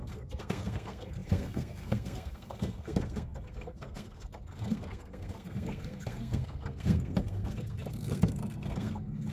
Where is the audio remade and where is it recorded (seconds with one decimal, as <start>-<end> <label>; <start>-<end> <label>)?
0.0-9.3 remade